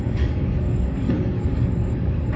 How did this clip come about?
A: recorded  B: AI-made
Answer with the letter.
B